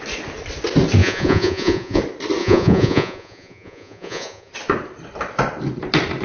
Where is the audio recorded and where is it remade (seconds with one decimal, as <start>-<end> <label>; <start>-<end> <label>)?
0.0-1.0 recorded; 1.0-2.0 remade; 2.0-2.4 recorded; 2.4-4.5 remade; 4.5-6.2 recorded